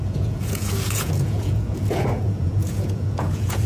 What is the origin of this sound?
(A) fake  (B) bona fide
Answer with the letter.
A